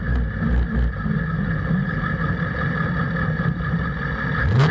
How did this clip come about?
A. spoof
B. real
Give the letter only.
B